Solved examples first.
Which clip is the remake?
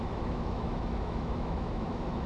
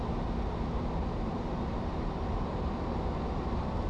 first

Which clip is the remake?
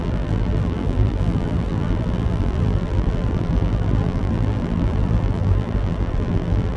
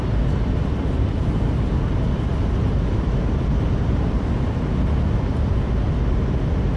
first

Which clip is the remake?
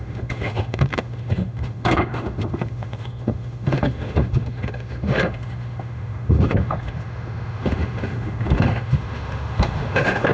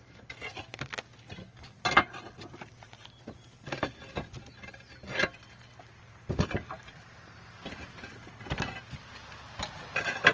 first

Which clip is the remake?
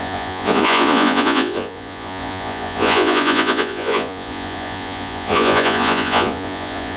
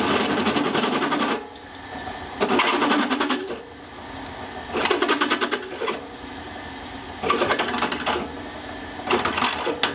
first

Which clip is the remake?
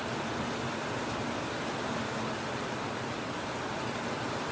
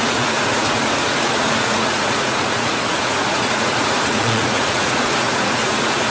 second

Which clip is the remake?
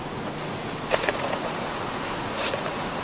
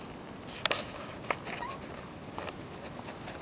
first